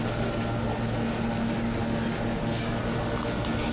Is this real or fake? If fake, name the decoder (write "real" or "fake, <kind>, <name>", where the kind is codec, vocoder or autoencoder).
real